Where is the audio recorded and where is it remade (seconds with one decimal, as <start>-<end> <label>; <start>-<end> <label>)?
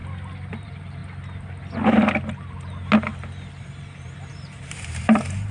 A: 0.0-0.5 recorded; 0.5-1.0 remade; 1.0-3.5 recorded; 3.5-5.5 remade